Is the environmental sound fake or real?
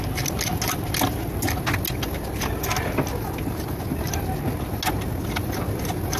real